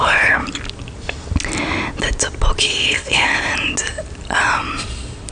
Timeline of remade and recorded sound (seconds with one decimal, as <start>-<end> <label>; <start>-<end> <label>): 0.0-0.4 remade; 0.4-2.6 recorded; 2.6-3.5 remade; 3.5-5.3 recorded